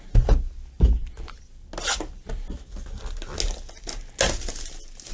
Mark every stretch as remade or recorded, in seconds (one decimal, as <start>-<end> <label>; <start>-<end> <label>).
0.0-5.1 recorded